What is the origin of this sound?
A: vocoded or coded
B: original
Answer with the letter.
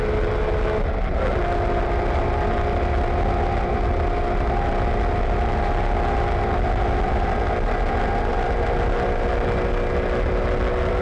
B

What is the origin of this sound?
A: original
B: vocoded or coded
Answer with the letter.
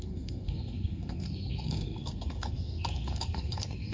B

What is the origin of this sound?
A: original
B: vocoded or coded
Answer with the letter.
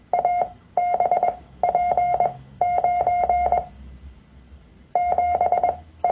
A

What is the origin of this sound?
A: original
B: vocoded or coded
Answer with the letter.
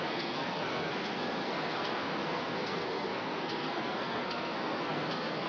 B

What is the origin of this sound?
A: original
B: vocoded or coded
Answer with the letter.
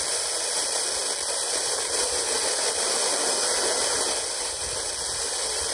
A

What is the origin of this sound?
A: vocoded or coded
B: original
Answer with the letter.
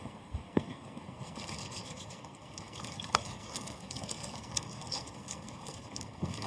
A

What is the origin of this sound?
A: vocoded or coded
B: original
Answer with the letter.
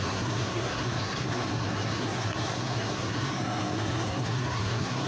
A